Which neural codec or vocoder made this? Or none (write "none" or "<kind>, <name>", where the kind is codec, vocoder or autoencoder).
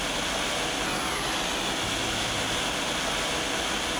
none